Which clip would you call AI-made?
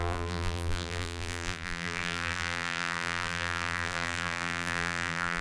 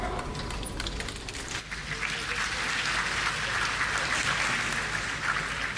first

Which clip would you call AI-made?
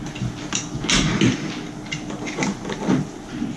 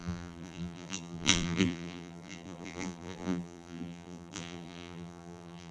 second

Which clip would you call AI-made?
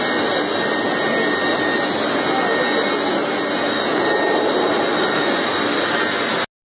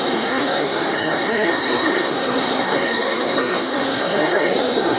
second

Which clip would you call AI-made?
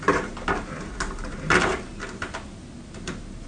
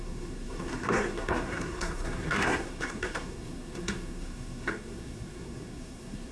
second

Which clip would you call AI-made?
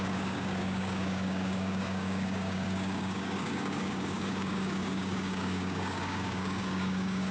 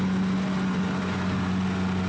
first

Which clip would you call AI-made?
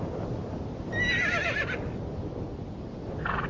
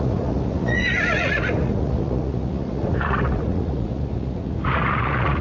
second